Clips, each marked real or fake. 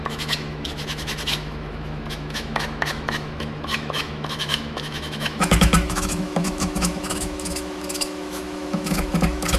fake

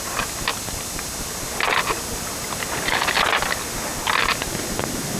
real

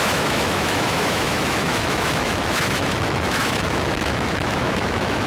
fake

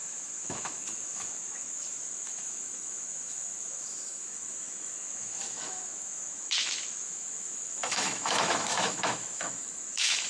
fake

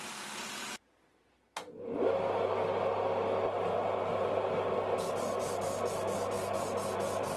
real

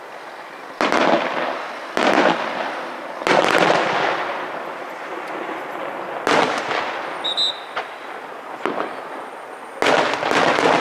real